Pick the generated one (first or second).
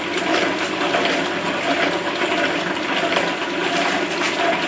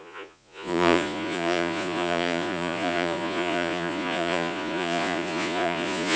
second